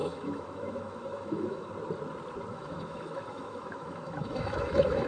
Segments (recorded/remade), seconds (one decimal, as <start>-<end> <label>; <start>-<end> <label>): 0.0-1.7 remade; 1.7-2.5 recorded; 2.5-5.1 remade